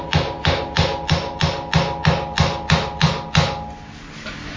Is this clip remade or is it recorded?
recorded